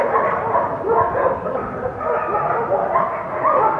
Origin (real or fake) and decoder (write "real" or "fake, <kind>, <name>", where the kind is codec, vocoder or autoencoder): real